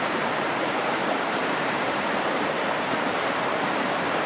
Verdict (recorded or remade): remade